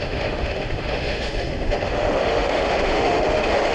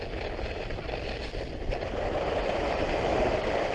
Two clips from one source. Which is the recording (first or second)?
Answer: second